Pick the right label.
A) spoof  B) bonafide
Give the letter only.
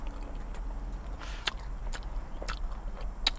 B